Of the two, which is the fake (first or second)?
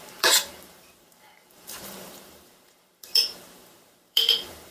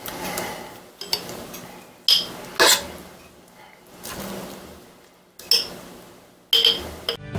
first